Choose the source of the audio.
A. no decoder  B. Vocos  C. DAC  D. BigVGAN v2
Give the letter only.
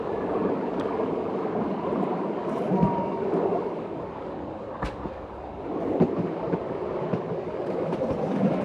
C